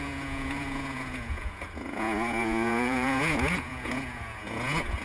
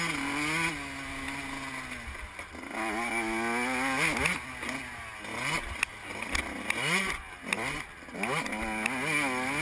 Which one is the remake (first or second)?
first